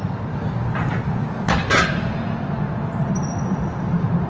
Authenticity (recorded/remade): recorded